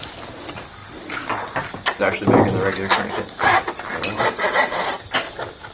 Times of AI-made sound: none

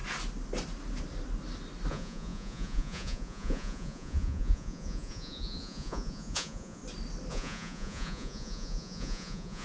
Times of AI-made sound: 1.9-6.8; 7.3-9.6

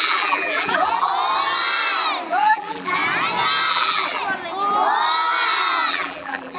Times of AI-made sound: 0.0-1.1; 2.3-3.0; 3.7-4.2; 5.9-6.6

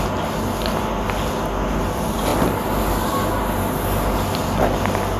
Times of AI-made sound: none

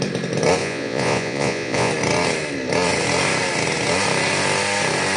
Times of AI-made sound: 0.6-1.9